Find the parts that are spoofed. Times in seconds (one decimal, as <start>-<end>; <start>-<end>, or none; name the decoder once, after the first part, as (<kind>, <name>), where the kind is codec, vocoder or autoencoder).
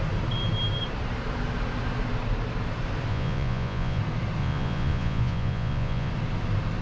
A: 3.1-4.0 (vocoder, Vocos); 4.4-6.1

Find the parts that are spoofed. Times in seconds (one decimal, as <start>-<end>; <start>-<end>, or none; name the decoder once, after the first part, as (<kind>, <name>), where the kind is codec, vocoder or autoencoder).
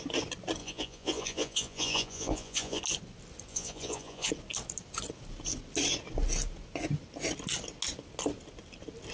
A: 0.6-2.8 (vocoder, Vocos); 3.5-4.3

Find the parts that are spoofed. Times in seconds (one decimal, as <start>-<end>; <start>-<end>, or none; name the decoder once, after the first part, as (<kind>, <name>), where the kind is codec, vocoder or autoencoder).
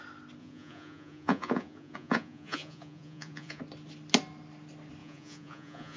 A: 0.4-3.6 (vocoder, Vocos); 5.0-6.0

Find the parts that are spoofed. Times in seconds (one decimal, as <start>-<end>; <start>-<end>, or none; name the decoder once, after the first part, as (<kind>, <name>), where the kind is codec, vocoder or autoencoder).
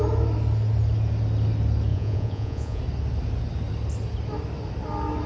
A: 1.9-2.8 (vocoder, Vocos)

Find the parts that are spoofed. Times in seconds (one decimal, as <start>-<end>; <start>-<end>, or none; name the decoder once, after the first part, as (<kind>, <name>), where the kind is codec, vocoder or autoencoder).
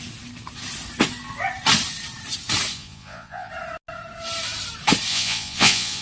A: 2.7-3.5 (vocoder, Vocos); 5.1-6.0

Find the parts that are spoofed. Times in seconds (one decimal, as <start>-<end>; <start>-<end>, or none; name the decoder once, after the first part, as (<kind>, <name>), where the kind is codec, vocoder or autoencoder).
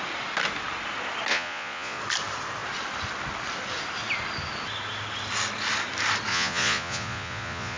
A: 1.3-2.0 (vocoder, Vocos); 6.3-7.8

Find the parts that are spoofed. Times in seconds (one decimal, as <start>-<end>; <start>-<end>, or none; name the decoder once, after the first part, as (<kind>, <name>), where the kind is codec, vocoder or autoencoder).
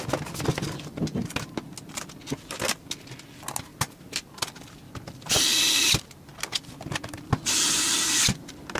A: none